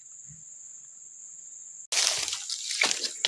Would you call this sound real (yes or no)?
yes